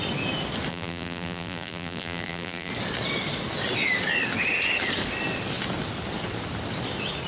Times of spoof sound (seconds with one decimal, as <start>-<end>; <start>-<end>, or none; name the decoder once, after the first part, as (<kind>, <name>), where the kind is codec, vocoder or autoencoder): 0.7-2.7 (vocoder, BigVGAN v2)